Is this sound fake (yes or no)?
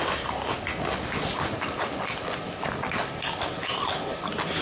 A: no